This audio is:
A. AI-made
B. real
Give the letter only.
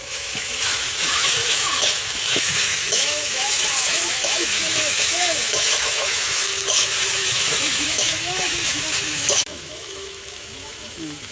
A